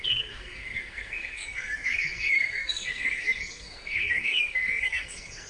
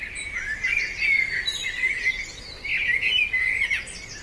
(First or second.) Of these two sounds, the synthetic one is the first